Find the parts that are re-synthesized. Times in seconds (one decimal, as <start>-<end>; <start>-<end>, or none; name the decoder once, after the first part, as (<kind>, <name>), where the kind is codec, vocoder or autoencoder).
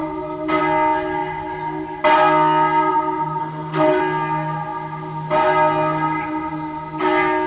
3.4-4.0 (autoencoder, DAC-VAE)